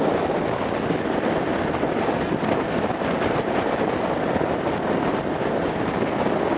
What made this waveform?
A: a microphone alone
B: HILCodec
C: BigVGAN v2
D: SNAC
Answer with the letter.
A